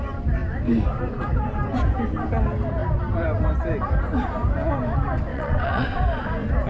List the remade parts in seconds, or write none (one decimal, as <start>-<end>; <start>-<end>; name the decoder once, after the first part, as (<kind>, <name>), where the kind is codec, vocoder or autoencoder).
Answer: 5.3-6.0 (vocoder, WaveNeXt)